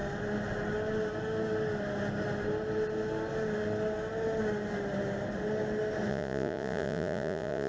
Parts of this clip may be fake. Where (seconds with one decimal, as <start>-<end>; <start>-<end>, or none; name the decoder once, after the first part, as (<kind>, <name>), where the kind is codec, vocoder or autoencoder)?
6.1-7.7 (vocoder, Vocos)